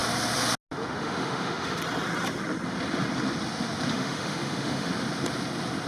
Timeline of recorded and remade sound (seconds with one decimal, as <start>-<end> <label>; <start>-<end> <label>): 0.0-1.0 recorded; 1.0-1.8 remade; 1.8-3.9 recorded; 3.9-4.9 remade; 4.9-5.9 recorded